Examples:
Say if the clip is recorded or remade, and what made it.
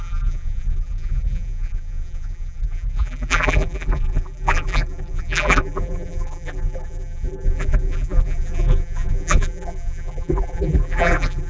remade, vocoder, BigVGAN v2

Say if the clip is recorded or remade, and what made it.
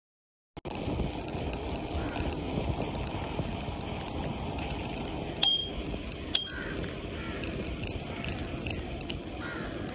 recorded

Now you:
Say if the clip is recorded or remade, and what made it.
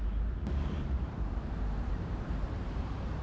remade, vocoder, BigVGAN v2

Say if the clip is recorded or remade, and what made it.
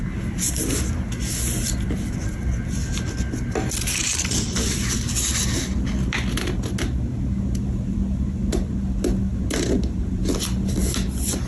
recorded